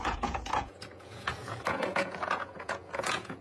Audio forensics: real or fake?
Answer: fake